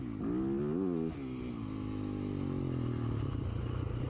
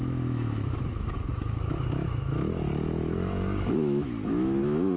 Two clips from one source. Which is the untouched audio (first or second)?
first